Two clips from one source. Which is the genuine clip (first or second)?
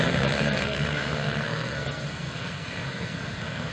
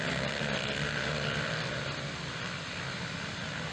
second